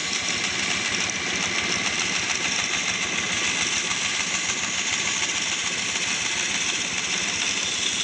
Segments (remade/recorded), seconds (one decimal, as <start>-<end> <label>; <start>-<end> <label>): 0.0-8.0 recorded